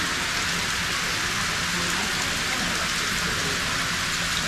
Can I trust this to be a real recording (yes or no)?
yes